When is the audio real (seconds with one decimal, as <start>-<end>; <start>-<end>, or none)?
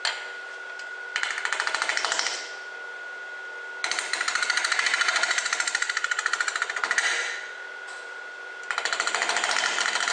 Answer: 0.0-10.1